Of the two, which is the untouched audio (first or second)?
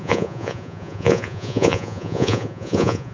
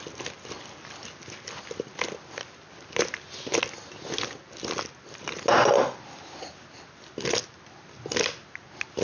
second